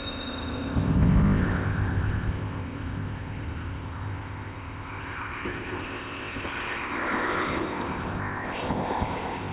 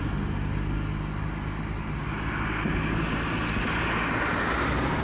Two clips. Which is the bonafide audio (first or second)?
second